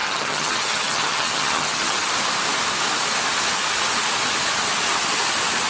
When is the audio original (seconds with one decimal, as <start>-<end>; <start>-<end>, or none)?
2.1-5.7